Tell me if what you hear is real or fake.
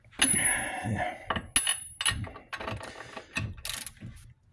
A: real